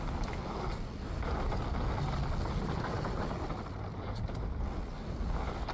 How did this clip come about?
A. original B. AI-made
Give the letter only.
A